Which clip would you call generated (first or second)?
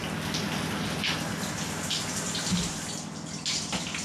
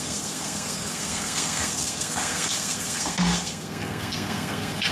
second